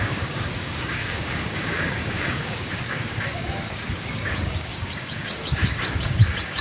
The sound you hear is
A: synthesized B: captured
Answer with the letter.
A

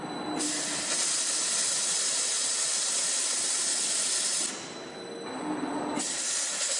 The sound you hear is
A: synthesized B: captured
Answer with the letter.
B